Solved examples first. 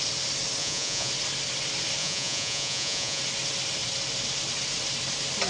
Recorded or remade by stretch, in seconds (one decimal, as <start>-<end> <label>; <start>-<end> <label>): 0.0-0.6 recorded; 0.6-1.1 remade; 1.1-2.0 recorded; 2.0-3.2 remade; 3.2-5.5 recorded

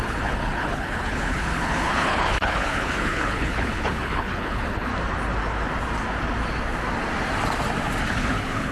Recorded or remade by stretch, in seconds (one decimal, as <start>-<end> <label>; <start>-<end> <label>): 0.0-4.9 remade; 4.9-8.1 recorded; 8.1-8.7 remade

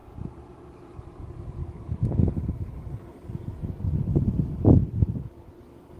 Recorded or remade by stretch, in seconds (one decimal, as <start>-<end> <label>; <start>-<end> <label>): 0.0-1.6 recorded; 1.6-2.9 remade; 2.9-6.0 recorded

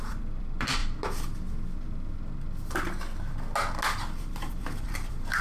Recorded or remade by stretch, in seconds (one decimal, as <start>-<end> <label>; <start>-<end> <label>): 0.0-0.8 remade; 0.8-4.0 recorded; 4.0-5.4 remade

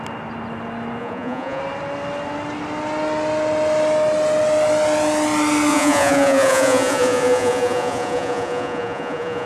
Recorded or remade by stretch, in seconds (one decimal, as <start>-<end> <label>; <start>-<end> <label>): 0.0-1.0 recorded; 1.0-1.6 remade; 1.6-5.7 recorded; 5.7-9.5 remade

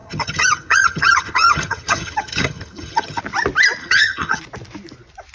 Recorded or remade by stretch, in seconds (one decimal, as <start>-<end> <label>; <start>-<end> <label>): 0.0-3.2 remade; 3.2-3.8 recorded; 3.8-4.4 remade; 4.4-5.3 recorded